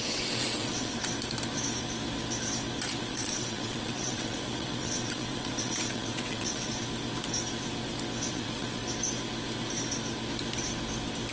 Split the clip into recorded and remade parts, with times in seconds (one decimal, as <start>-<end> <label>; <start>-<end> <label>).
0.0-1.0 remade; 1.0-3.0 recorded; 3.0-6.7 remade; 6.7-8.3 recorded; 8.3-8.8 remade; 8.8-11.3 recorded

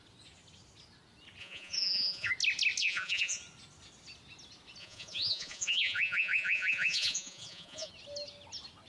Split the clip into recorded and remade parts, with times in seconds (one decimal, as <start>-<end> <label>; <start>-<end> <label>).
0.0-1.4 recorded; 1.4-2.3 remade; 2.3-2.8 recorded; 2.8-3.4 remade; 3.4-4.8 recorded; 4.8-7.9 remade; 7.9-8.9 recorded